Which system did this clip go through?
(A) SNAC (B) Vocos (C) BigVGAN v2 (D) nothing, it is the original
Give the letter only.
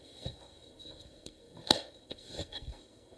A